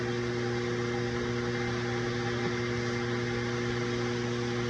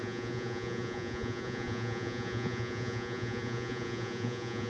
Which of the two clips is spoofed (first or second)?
second